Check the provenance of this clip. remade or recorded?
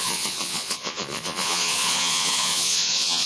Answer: remade